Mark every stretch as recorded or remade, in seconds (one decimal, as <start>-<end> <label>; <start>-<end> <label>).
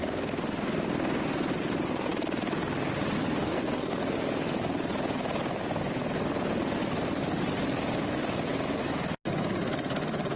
0.0-3.4 recorded; 3.4-4.0 remade; 4.0-10.4 recorded